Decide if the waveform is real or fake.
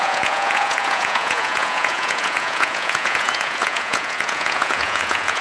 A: fake